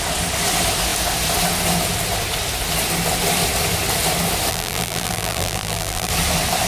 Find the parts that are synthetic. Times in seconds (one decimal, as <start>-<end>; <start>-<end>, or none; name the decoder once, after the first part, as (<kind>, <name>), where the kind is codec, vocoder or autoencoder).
4.5-6.1 (vocoder, BigVGAN v2)